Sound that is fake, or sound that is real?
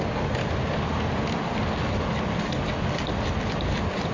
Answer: real